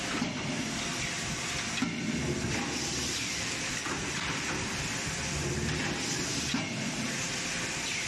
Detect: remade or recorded recorded